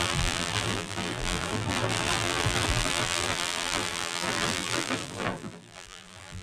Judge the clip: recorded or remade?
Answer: remade